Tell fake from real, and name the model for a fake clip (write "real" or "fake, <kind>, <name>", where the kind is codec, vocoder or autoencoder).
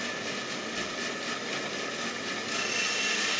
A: real